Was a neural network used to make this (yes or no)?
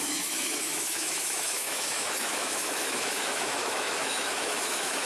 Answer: yes